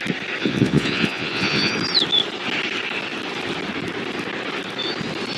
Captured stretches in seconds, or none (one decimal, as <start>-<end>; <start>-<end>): 0.0-0.4; 1.7-5.4